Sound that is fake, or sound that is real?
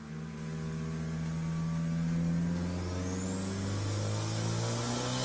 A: real